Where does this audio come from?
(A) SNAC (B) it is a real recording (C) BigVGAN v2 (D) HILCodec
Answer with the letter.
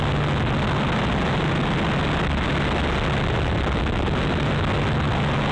B